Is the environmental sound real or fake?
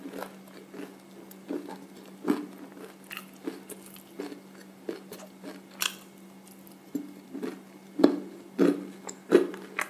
real